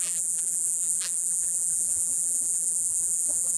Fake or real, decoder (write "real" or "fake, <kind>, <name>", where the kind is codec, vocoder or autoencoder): fake, vocoder, BigVGAN v2